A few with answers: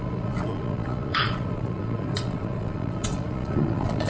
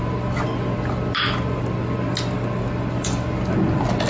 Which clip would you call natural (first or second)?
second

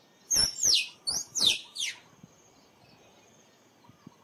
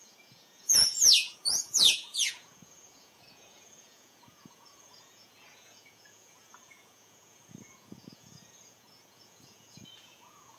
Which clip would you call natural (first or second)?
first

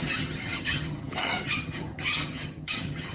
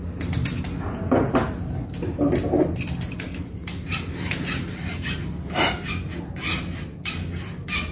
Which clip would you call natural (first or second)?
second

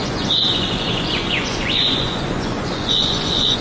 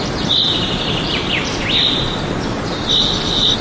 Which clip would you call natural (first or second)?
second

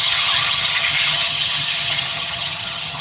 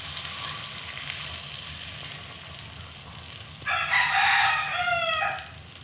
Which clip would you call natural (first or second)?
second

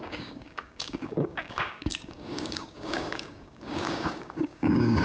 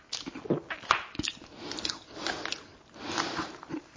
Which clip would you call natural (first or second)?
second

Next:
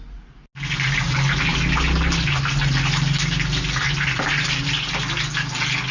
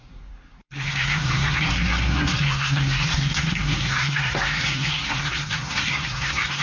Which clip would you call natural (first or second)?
first